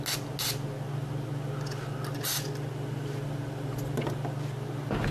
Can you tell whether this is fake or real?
real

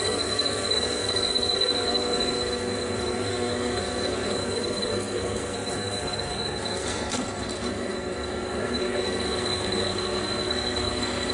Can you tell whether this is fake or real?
fake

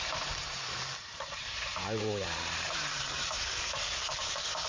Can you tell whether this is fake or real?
fake